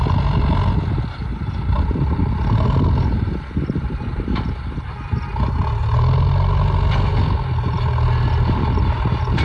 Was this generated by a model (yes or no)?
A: no